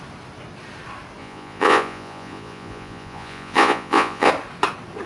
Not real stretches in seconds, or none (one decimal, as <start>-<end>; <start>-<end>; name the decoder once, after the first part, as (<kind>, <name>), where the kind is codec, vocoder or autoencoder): 1.2-4.3 (vocoder, Vocos)